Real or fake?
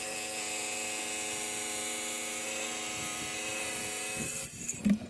real